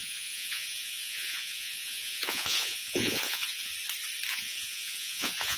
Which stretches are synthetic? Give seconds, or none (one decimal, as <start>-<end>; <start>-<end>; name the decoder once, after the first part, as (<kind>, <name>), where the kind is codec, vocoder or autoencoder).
0.0-3.7 (vocoder, Vocos); 4.3-5.6